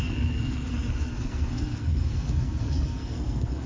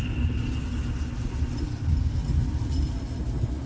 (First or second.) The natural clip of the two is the second